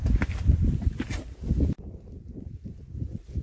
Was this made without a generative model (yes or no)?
yes